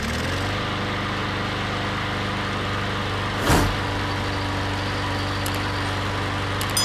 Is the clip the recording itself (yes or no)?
yes